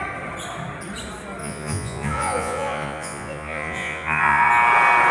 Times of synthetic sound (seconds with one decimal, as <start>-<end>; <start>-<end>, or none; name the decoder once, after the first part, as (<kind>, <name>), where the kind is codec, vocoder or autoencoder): 1.4-4.5 (vocoder, Vocos)